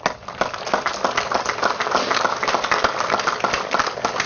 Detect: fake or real real